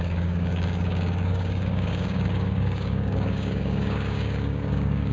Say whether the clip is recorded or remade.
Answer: remade